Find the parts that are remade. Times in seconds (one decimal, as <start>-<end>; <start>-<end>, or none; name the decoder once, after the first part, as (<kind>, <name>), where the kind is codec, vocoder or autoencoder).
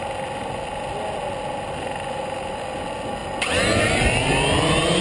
none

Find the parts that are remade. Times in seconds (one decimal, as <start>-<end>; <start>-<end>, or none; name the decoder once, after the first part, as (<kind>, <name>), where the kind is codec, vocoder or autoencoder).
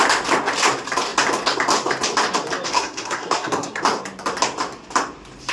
2.7-3.8 (codec, SNAC)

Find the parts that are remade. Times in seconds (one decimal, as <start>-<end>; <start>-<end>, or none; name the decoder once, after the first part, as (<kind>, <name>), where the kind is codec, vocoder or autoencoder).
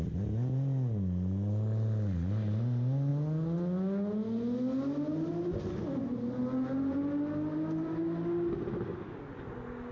none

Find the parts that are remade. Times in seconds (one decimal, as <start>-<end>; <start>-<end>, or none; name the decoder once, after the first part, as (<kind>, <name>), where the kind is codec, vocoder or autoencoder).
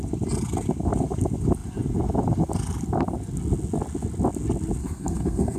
4.8-5.6 (codec, SNAC)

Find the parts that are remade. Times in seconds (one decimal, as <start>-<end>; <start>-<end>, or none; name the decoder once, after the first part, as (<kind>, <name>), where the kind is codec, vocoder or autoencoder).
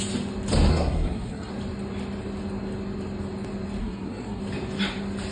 0.7-1.5 (codec, SNAC); 3.8-4.4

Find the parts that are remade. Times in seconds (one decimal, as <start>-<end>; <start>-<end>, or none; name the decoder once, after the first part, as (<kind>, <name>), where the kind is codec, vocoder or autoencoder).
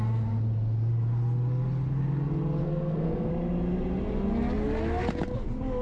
2.6-3.3 (codec, SNAC)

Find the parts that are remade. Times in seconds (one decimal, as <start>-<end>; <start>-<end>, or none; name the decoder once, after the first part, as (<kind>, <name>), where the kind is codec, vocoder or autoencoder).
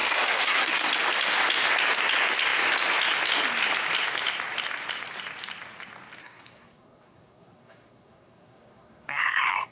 0.0-0.8 (codec, SNAC); 6.2-9.7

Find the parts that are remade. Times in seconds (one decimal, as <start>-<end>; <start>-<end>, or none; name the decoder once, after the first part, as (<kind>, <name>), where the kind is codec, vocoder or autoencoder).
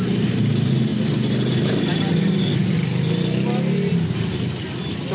none